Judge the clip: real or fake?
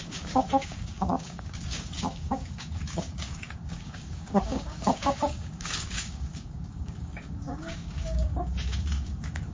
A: fake